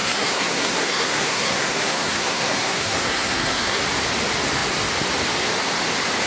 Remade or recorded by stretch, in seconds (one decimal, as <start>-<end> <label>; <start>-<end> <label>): 0.0-3.8 remade; 3.8-6.3 recorded